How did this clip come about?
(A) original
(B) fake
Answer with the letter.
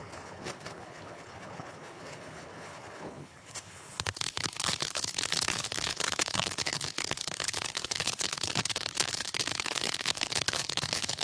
B